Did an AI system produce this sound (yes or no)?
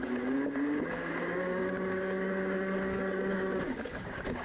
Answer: yes